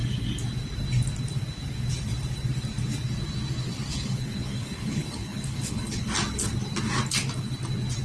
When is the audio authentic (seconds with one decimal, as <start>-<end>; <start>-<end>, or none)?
0.0-3.9; 6.1-8.0